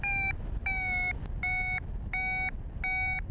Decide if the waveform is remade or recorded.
recorded